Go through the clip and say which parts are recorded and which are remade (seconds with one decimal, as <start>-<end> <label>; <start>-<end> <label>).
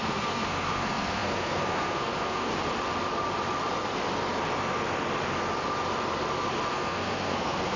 0.0-2.5 remade; 2.5-6.7 recorded; 6.7-7.8 remade